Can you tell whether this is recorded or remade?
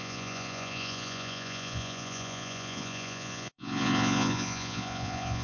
remade